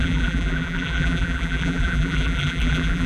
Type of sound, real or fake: fake